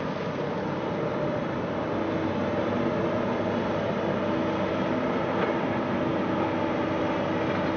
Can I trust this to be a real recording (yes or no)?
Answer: yes